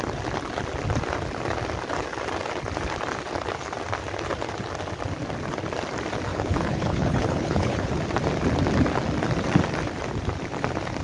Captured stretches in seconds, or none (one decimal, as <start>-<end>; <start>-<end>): 0.0-6.3; 7.9-11.0